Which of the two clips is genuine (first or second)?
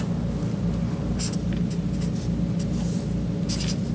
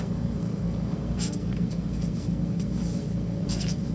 first